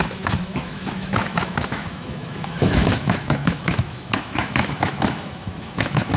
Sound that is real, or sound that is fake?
fake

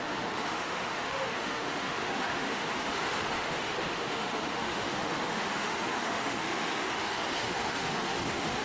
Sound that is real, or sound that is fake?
fake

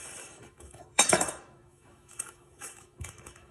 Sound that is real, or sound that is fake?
fake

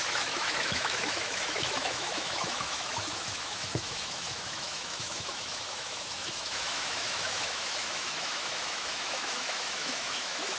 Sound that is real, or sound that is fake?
fake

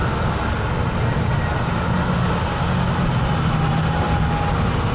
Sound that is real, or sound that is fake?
real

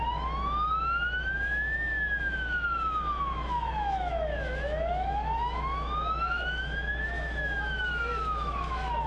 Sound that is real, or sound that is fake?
fake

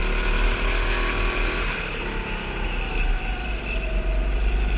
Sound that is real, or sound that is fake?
real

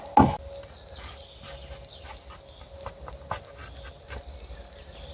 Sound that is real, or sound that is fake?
real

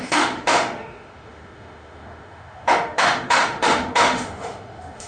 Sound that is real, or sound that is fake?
fake